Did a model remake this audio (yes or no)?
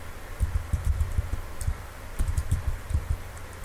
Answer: no